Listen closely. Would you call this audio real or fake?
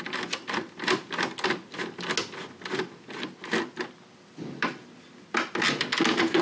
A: real